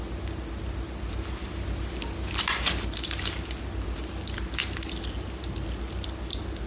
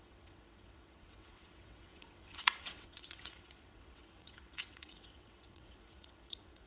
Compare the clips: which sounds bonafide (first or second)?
first